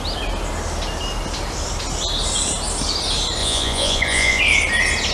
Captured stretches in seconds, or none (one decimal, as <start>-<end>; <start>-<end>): 0.0-3.4; 4.4-5.1